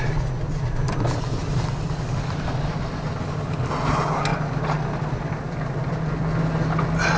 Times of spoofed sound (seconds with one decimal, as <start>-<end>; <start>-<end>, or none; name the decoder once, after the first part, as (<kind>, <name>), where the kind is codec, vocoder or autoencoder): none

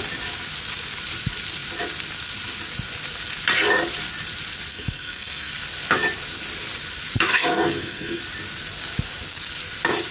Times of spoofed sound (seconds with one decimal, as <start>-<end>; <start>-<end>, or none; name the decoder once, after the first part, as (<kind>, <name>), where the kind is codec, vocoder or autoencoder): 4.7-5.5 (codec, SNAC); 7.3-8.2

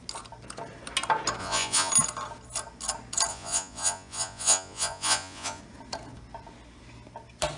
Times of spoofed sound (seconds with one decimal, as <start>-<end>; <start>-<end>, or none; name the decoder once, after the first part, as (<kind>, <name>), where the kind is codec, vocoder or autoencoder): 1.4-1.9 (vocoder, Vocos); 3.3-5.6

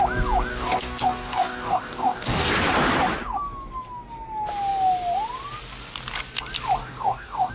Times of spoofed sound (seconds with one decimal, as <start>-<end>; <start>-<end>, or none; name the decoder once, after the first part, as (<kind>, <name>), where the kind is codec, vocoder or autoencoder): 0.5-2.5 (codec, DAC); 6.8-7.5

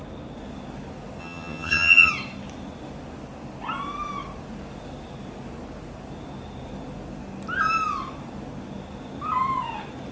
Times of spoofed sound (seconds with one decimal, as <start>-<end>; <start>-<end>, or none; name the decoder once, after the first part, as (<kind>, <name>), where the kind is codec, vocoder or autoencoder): 1.2-2.1 (vocoder, HiFi-GAN)